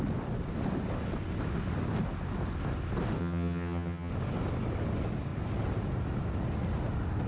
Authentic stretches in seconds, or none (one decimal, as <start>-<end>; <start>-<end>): 0.0-3.2; 4.1-7.3